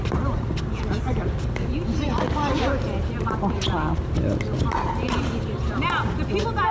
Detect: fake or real real